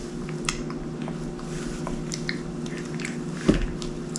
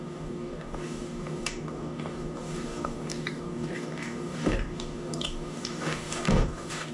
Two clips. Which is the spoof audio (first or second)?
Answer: second